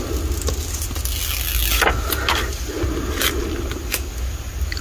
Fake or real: real